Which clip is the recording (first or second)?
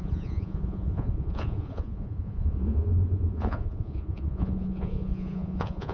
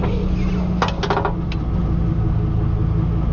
second